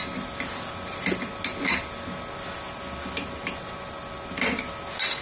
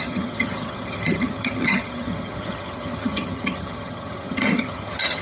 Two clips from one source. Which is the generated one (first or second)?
second